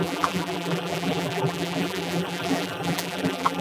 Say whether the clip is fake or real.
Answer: fake